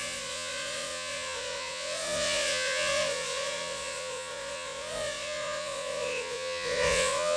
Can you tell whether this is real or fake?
fake